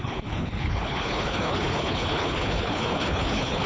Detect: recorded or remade remade